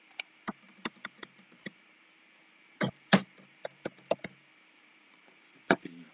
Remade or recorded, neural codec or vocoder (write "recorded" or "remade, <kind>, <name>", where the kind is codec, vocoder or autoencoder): remade, vocoder, BigVGAN v2